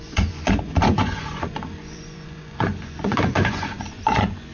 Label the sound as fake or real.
fake